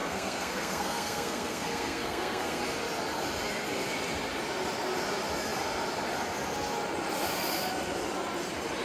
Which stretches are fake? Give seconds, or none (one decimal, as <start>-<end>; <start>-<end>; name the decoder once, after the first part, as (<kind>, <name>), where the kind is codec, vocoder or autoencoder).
0.0-2.6 (codec, SNAC)